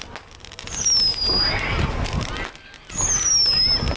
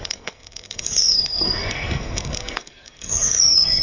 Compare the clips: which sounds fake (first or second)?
second